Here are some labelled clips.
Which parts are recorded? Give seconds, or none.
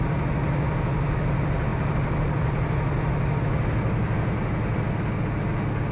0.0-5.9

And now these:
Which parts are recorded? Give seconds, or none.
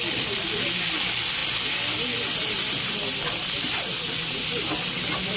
0.0-5.4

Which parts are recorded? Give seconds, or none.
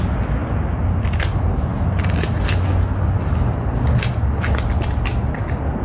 0.0-5.8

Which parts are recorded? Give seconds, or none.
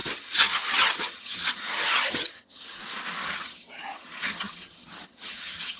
2.8-3.2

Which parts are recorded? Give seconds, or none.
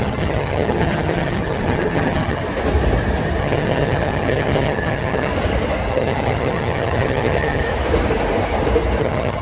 2.4-3.4; 5.3-5.9; 7.6-9.0